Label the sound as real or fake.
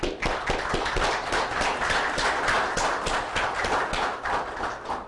real